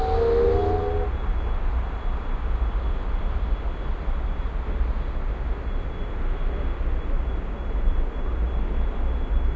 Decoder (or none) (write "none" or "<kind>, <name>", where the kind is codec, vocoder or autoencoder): none